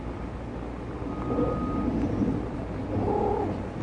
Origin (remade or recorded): recorded